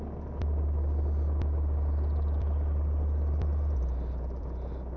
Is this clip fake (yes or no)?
no